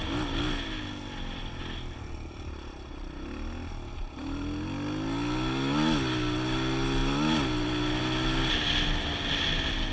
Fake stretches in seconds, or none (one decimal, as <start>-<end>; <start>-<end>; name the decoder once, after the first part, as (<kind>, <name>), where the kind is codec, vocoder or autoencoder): none